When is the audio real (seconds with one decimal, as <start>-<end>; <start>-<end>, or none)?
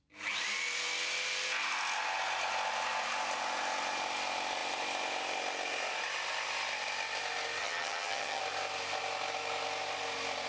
0.0-7.6; 8.4-10.5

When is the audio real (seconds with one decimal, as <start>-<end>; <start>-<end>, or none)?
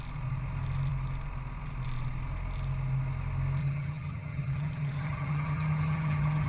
0.0-3.6